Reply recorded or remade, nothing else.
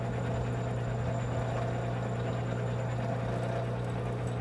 recorded